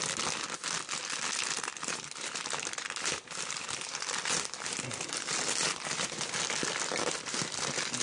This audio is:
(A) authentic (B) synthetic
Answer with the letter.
A